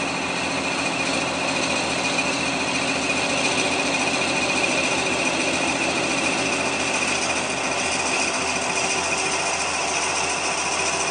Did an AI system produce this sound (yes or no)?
no